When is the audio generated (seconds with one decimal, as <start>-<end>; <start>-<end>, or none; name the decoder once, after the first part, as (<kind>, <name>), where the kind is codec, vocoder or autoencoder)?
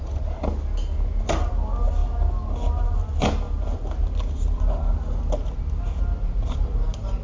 none